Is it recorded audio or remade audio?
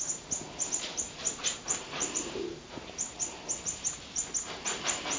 remade